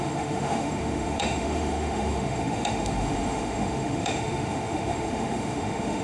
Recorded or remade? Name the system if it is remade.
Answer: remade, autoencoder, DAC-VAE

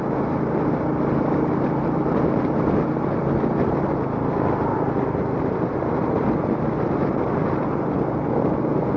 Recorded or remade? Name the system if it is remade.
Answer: recorded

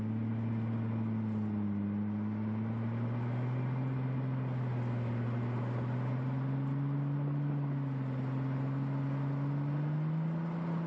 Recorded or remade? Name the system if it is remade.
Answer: recorded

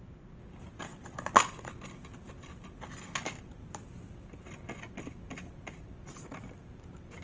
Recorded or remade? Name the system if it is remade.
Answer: recorded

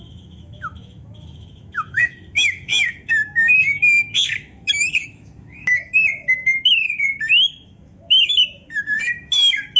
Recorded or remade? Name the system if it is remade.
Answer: remade, autoencoder, DAC-VAE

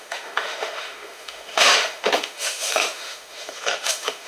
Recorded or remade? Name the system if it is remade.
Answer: remade, autoencoder, DAC-VAE